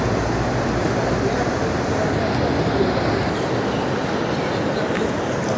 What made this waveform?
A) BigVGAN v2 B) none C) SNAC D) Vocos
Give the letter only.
B